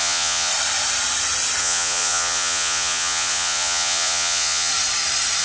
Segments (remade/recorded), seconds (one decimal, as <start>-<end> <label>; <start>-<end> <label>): 0.0-0.5 remade; 0.5-1.6 recorded; 1.6-4.7 remade; 4.7-5.4 recorded